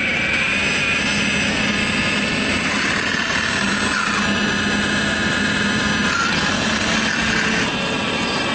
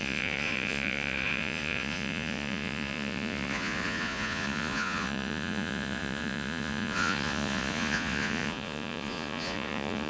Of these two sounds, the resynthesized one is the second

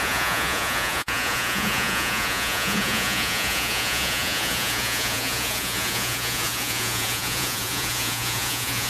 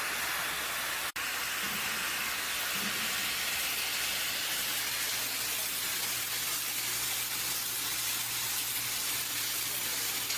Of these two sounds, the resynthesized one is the first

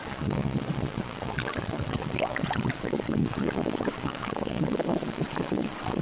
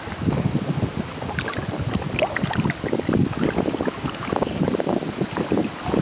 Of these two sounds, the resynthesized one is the first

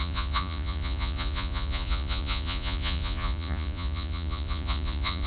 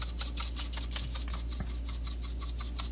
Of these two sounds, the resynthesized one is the first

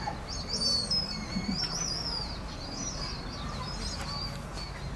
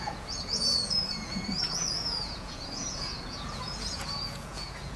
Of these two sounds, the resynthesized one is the second